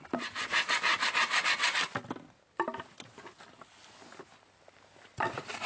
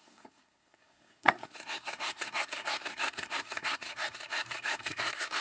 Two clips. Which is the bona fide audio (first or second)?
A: first